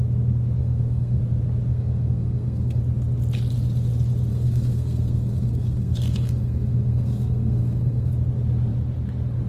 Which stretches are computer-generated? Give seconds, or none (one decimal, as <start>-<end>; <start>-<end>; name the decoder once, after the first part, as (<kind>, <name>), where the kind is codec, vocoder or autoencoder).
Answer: 0.6-1.2 (codec, SNAC); 1.7-2.8; 4.3-8.1